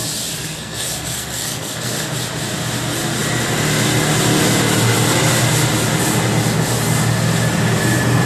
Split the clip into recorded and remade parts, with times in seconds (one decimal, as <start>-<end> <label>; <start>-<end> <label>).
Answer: 0.0-0.4 recorded; 0.4-2.1 remade; 2.1-8.3 recorded